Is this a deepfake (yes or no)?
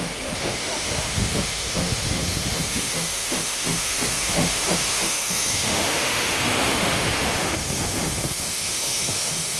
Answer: yes